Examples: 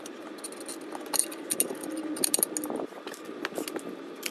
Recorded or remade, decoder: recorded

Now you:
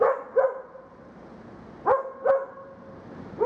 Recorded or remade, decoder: recorded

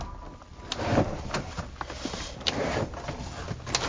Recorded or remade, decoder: recorded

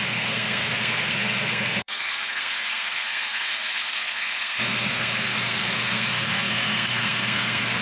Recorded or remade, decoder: remade, codec, SNAC